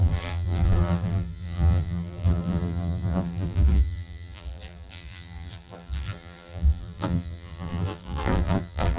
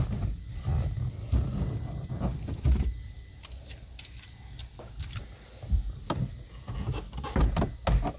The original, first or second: second